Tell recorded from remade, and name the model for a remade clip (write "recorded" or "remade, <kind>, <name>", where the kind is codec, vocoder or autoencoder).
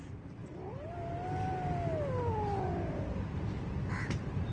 recorded